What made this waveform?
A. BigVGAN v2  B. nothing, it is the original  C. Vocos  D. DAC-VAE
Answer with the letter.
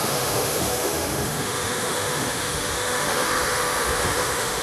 D